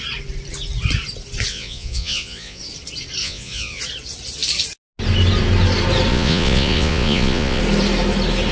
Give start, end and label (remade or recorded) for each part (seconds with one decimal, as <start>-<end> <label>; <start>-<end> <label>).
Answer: 0.0-1.5 recorded; 1.5-2.6 remade; 2.6-3.2 recorded; 3.2-3.8 remade; 3.8-6.1 recorded; 6.1-7.6 remade; 7.6-8.5 recorded